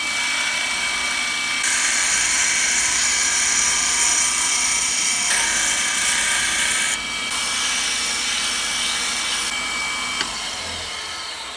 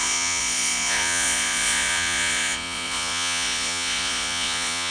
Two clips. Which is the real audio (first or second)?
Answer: first